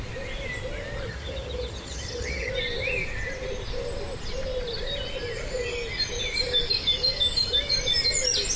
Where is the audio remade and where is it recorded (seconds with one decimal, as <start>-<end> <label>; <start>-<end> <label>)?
0.0-1.1 recorded; 1.1-2.5 remade; 2.5-8.6 recorded